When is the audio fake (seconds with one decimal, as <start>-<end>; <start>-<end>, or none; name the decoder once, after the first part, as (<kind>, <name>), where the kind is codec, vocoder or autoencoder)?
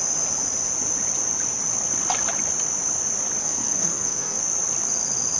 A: 3.4-4.4 (codec, SNAC)